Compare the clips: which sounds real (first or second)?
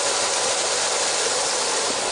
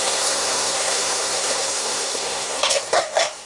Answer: first